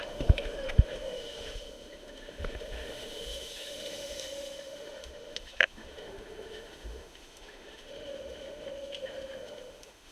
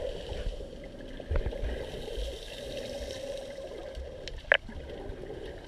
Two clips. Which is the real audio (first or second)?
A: second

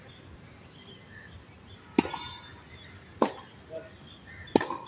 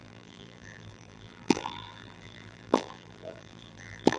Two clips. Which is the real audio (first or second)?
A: first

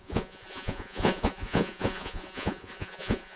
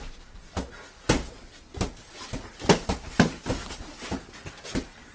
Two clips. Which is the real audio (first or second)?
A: second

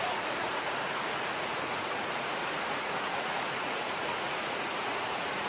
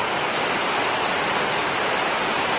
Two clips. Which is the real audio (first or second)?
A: second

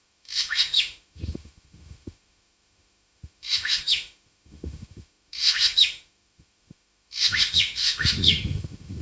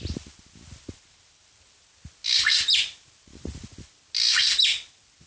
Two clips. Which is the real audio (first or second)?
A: second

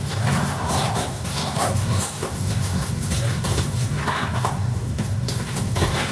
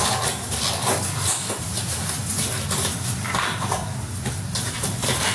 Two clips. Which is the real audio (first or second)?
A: second